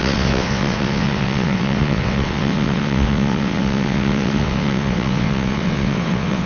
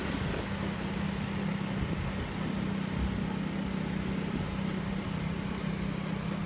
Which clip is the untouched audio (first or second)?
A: second